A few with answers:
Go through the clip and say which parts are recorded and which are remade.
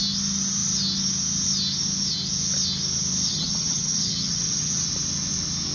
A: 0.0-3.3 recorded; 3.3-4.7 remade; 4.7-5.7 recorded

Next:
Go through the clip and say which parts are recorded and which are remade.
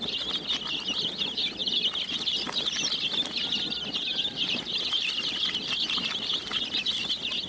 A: 0.0-7.5 recorded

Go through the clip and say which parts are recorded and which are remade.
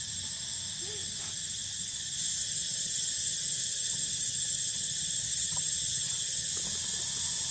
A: 0.0-2.4 recorded; 2.4-6.5 remade; 6.5-7.5 recorded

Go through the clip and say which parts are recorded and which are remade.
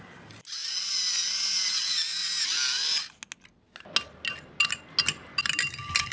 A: 0.0-6.1 recorded